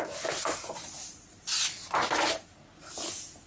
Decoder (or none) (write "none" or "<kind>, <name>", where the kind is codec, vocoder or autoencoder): none